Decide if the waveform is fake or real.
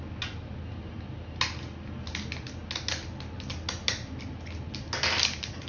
real